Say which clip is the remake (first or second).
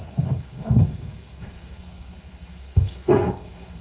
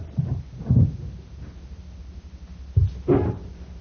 first